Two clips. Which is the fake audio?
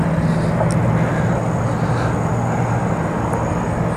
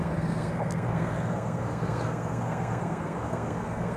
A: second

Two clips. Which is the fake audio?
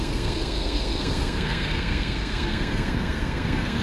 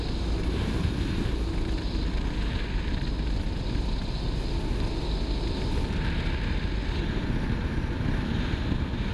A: first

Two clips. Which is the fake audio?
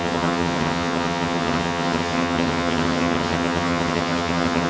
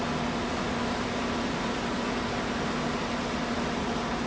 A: first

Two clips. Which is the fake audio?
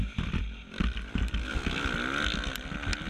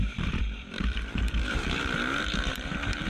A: second